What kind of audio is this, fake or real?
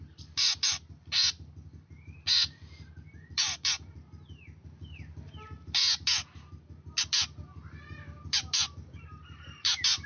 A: fake